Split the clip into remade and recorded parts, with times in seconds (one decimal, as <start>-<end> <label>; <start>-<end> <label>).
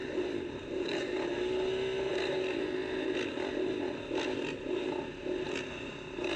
0.0-1.0 remade; 1.0-6.4 recorded